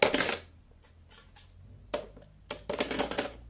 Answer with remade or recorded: recorded